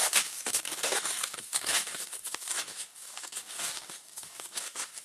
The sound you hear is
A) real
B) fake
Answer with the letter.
B